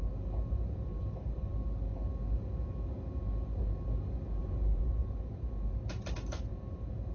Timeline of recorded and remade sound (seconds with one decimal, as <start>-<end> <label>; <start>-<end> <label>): 0.0-1.5 remade; 1.5-4.4 recorded; 4.4-7.1 remade

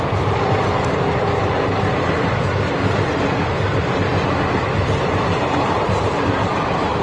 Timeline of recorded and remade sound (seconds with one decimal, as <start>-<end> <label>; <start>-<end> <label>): 0.0-4.1 remade; 4.1-4.6 recorded; 4.6-7.0 remade

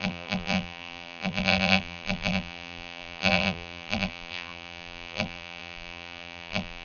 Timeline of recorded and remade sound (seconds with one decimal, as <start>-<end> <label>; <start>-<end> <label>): 0.0-6.8 remade

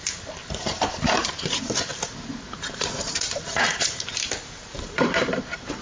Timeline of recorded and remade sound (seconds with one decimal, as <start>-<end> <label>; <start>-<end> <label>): 0.0-0.7 recorded; 0.7-4.1 remade; 4.1-4.6 recorded; 4.6-5.8 remade

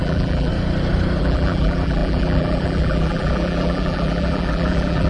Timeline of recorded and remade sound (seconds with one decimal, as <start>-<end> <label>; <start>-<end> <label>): 0.0-0.5 remade; 0.5-1.2 recorded; 1.2-5.1 remade

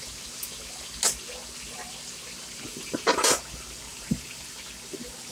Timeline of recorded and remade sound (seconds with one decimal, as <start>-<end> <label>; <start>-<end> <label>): 0.0-2.7 recorded; 2.7-3.4 remade; 3.4-3.9 recorded; 3.9-4.6 remade; 4.6-5.3 recorded

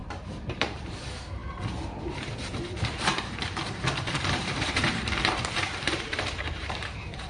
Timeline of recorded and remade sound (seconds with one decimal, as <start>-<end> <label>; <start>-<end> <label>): 0.0-1.4 remade; 1.4-2.1 recorded; 2.1-7.3 remade

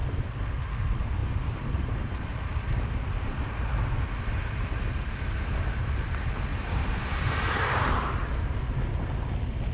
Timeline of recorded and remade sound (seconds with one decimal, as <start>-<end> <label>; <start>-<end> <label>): 0.0-1.2 recorded; 1.2-2.9 remade; 2.9-6.5 recorded; 6.5-8.1 remade; 8.1-9.7 recorded